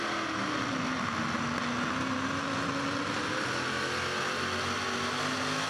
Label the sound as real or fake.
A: real